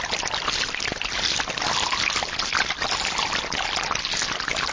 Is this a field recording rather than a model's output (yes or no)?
yes